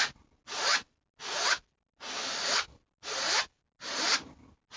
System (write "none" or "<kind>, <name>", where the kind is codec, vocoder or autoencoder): none